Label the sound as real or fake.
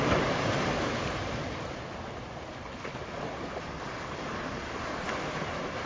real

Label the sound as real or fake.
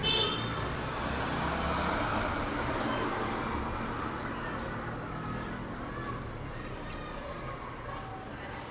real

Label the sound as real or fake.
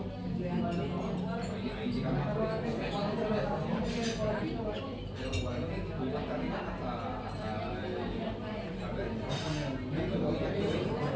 real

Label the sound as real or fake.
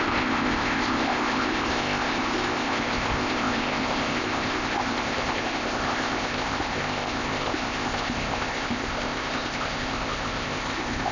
fake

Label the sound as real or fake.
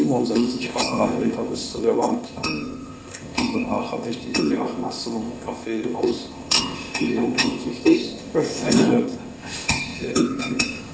fake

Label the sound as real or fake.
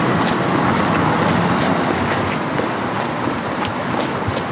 real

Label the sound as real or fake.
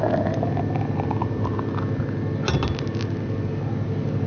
real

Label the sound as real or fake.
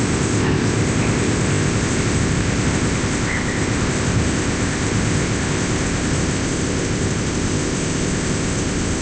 fake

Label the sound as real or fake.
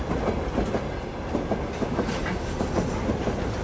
real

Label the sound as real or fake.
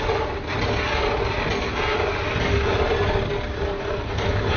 real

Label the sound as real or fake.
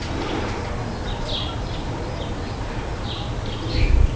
real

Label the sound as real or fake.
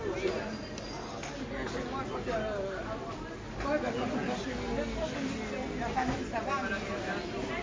real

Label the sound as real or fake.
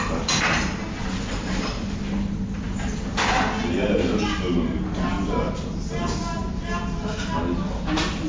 real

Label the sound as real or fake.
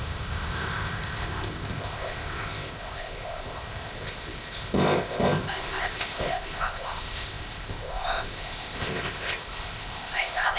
fake